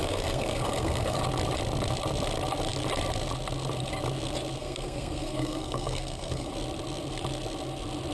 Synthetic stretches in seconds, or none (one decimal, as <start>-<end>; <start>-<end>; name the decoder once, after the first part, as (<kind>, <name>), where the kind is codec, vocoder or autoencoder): 0.0-1.2 (codec, SNAC); 4.6-6.5